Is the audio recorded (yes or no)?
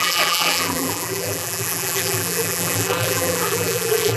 no